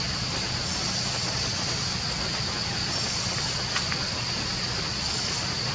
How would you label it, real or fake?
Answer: real